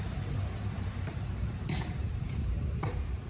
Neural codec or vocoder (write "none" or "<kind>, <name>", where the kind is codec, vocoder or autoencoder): vocoder, BigVGAN v2